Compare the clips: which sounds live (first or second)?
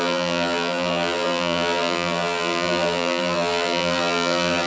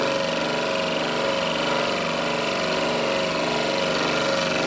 second